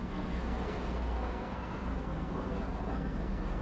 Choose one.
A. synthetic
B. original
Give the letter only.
A